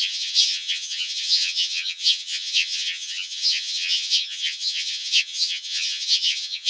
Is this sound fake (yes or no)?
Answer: yes